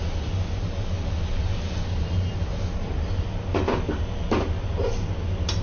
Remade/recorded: recorded